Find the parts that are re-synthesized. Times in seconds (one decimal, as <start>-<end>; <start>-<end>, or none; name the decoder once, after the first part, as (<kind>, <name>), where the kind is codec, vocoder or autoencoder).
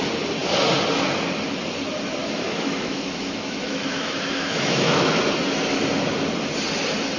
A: 2.2-5.2 (autoencoder, DAC-VAE)